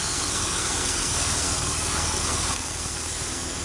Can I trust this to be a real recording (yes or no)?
no